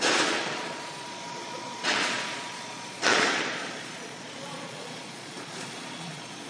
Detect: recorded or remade remade